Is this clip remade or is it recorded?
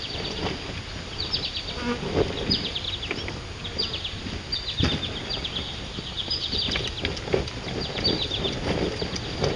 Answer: recorded